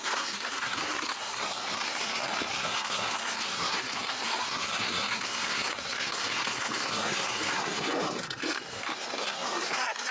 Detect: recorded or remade remade